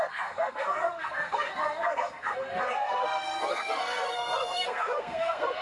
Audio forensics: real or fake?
fake